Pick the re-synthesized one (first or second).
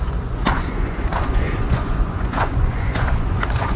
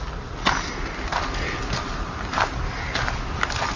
first